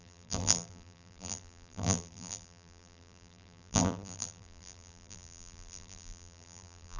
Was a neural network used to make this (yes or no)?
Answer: yes